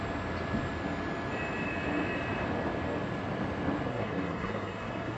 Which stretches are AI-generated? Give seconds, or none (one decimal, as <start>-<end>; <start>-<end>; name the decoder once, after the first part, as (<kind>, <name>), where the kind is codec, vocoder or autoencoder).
3.9-5.2 (codec, SNAC)